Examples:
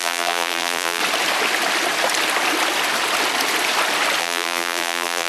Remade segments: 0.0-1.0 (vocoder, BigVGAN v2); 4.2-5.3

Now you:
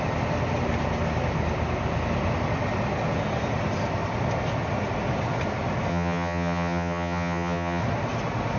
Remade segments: 5.9-7.8 (vocoder, HiFi-GAN)

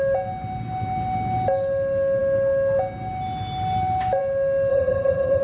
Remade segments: 4.7-5.4 (vocoder, HiFi-GAN)